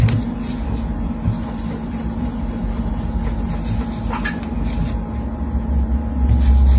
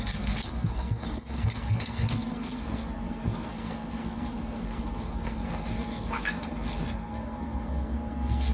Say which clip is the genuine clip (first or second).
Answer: first